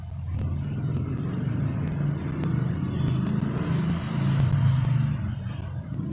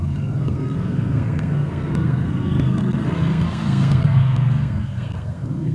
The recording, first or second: first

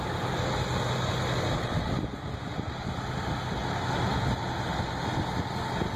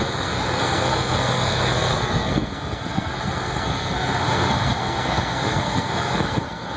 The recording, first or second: first